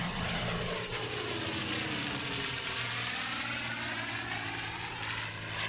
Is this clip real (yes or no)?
no